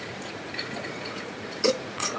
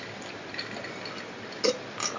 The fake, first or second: first